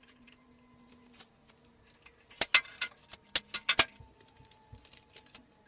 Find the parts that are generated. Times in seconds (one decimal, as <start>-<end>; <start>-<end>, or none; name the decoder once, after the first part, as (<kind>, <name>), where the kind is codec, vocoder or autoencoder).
0.0-1.7 (vocoder, BigVGAN v2); 3.7-5.7